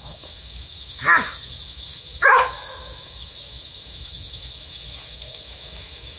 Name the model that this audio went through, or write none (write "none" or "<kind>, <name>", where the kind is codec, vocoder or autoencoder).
autoencoder, DAC-VAE